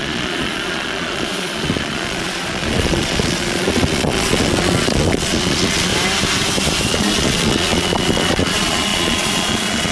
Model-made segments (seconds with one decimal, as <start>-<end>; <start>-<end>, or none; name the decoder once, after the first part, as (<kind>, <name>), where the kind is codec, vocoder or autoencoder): 0.0-5.9 (vocoder, Vocos); 6.9-9.9